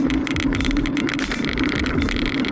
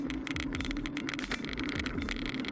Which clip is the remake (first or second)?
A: first